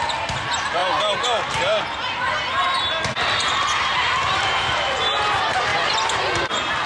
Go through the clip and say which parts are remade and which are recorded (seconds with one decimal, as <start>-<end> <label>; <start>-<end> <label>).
0.0-6.9 recorded